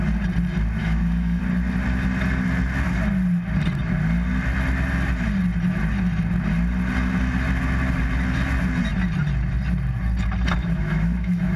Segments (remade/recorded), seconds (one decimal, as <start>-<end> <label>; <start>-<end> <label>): 0.0-0.8 recorded; 0.8-1.4 remade; 1.4-10.6 recorded; 10.6-11.6 remade